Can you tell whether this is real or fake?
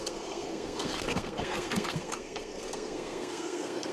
fake